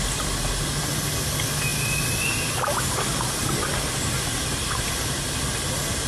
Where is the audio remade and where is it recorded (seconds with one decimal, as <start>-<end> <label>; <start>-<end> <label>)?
0.0-6.1 recorded